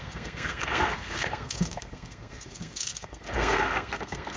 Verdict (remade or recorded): remade